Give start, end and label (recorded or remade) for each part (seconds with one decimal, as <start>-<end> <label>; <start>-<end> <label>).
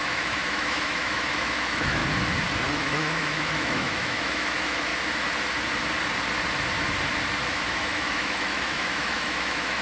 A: 0.0-2.0 remade; 2.0-2.7 recorded; 2.7-4.9 remade; 4.9-7.5 recorded; 7.5-9.8 remade